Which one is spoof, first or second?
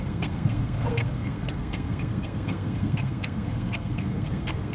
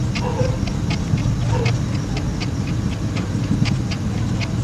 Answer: first